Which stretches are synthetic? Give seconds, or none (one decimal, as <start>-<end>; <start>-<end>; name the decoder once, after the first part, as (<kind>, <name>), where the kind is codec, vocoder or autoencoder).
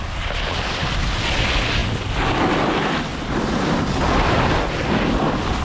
none